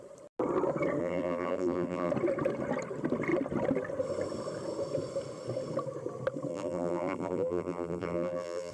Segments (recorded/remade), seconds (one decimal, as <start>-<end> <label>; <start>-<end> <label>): 0.0-1.0 recorded; 1.0-2.1 remade; 2.1-6.5 recorded; 6.5-8.7 remade